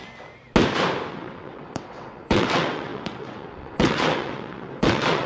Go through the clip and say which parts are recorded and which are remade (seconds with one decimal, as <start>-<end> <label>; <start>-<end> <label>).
0.0-1.1 recorded; 1.1-5.3 remade